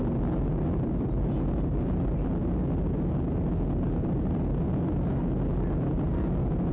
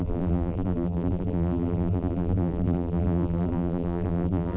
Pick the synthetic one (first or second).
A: second